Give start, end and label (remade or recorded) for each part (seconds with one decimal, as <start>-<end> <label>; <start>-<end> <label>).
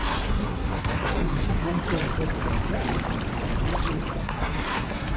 0.0-1.8 remade; 1.8-4.2 recorded; 4.2-5.2 remade